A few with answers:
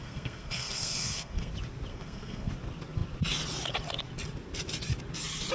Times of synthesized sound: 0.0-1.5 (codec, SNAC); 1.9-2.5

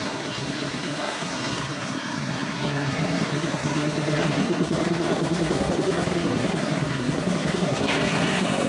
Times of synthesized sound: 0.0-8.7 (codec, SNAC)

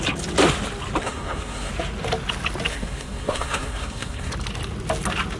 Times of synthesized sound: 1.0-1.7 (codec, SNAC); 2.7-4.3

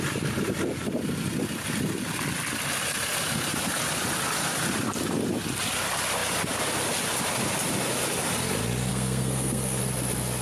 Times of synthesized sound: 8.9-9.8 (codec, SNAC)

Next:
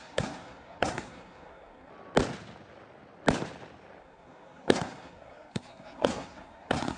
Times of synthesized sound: 0.0-1.9 (codec, SNAC); 4.0-7.0

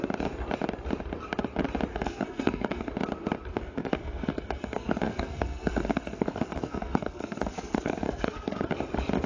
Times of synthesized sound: 1.9-2.9 (codec, SNAC); 3.5-8.7

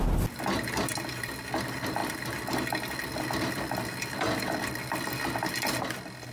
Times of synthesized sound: none